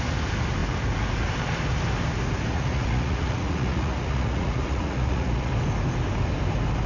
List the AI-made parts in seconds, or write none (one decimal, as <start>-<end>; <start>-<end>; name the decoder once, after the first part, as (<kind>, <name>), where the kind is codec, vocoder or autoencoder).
2.5-5.5 (vocoder, Vocos)